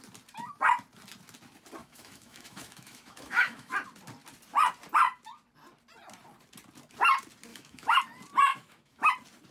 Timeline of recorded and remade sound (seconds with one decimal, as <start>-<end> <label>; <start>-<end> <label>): 0.0-1.8 recorded; 1.8-3.7 remade; 3.7-7.5 recorded; 7.5-8.0 remade; 8.0-8.5 recorded; 8.5-9.1 remade; 9.1-9.5 recorded